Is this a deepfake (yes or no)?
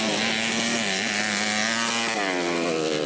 no